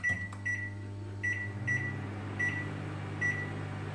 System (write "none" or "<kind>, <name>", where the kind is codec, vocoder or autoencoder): none